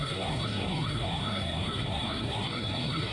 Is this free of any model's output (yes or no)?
no